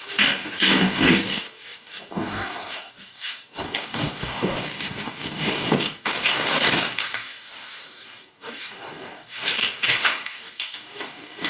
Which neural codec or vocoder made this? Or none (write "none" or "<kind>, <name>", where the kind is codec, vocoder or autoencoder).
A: codec, DAC